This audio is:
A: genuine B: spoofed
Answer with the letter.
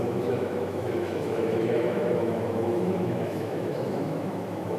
B